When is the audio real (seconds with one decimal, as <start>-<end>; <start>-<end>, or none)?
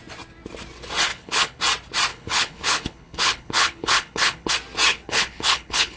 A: 0.0-1.1; 1.6-2.1; 4.5-4.9